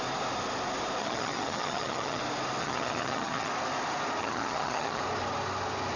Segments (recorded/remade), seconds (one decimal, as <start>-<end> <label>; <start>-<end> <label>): 0.0-1.0 recorded; 1.0-2.2 remade; 2.2-2.6 recorded; 2.6-3.5 remade; 3.5-4.2 recorded; 4.2-5.0 remade; 5.0-6.0 recorded